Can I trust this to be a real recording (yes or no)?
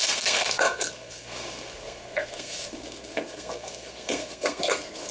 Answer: no